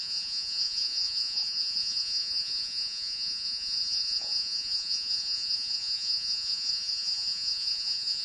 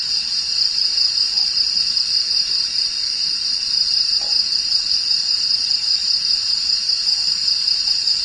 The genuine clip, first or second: second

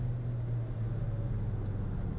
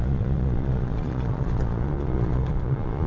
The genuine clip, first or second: first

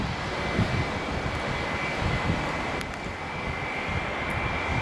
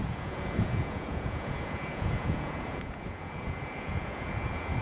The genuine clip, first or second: first